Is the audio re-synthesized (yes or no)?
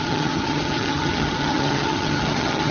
yes